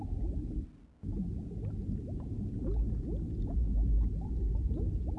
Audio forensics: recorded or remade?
recorded